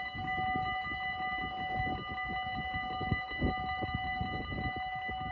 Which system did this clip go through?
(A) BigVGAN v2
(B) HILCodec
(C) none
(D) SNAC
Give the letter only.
C